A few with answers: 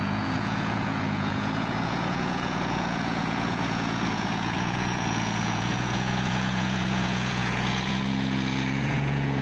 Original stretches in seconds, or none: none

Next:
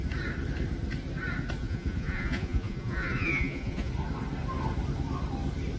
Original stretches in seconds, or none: 0.0-1.6; 3.9-5.8

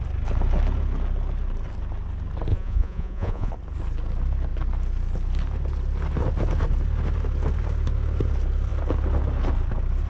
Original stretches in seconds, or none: 0.0-2.5; 3.5-10.1

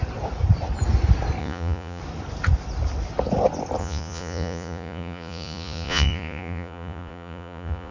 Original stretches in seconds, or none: 0.0-1.4; 2.0-3.8